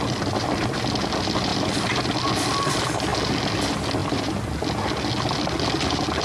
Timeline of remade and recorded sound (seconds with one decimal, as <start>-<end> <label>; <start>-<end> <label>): 0.0-1.5 recorded; 1.5-2.3 remade; 2.3-4.0 recorded; 4.0-4.5 remade; 4.5-6.2 recorded